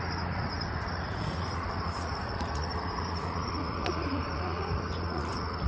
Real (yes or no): no